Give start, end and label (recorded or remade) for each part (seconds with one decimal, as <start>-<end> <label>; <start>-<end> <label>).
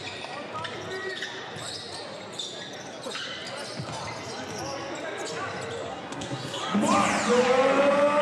0.0-5.9 recorded; 5.9-6.6 remade; 6.6-8.2 recorded